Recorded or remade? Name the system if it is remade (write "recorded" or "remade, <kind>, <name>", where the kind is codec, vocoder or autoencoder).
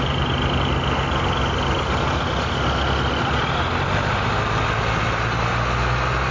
recorded